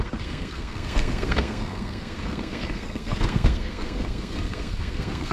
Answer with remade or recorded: remade